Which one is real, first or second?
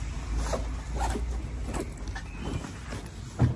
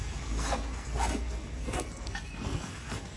first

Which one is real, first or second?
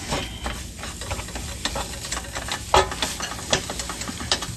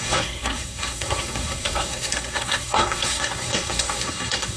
first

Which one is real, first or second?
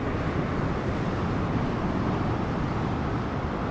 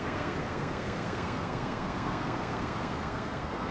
first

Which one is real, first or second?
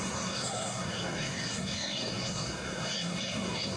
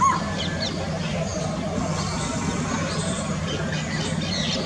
second